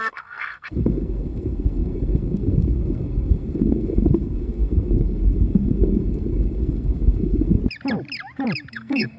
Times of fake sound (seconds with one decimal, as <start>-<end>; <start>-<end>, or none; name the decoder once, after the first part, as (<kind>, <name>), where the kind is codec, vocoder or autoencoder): 0.0-7.6 (codec, SNAC); 8.7-9.2